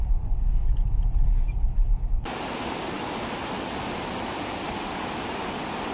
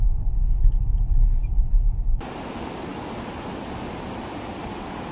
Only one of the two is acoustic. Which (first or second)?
second